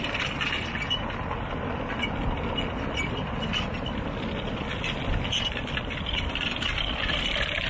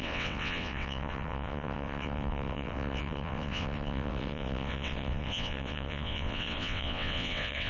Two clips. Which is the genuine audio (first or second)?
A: first